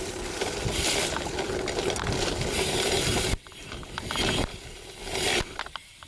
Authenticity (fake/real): real